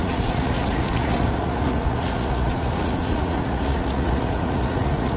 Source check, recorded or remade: remade